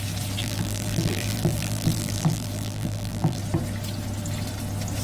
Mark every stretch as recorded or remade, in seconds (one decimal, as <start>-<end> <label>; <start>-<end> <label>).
0.0-0.4 recorded; 0.4-3.4 remade; 3.4-5.0 recorded

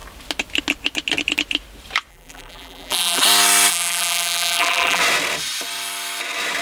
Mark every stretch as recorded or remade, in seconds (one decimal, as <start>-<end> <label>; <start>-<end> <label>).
0.0-2.1 recorded; 2.1-3.2 remade; 3.2-3.7 recorded; 3.7-5.0 remade; 5.0-6.6 recorded

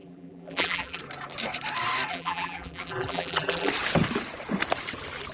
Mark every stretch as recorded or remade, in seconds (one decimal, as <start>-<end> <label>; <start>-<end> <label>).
0.0-1.0 remade; 1.0-2.1 recorded; 2.1-3.7 remade; 3.7-5.3 recorded

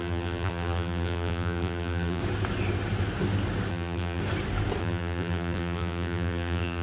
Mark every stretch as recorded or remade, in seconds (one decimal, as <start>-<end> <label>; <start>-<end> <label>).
0.0-2.2 remade; 2.2-3.7 recorded; 3.7-4.2 remade; 4.2-4.8 recorded; 4.8-6.8 remade

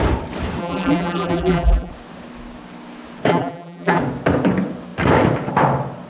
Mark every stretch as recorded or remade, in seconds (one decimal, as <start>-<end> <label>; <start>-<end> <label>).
0.0-0.6 recorded; 0.6-1.9 remade; 1.9-3.3 recorded; 3.3-4.0 remade; 4.0-6.1 recorded

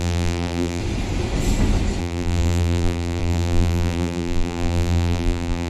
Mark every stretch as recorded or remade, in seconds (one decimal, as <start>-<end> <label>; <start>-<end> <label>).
0.0-0.8 remade; 0.8-2.0 recorded; 2.0-5.7 remade

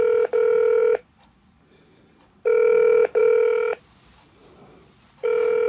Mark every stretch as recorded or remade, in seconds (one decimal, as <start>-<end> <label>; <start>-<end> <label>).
0.0-5.7 recorded